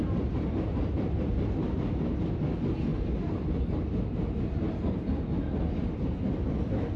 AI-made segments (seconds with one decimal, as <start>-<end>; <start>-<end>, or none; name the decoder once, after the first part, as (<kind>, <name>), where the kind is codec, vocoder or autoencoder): 2.9-3.6 (vocoder, BigVGAN v2)